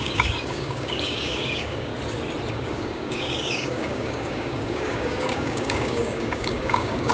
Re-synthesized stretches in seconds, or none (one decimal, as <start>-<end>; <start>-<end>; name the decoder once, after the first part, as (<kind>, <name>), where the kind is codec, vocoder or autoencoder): 0.0-1.9 (codec, DAC); 2.5-7.1